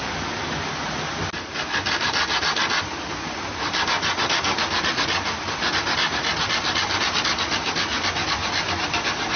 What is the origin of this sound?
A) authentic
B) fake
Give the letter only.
A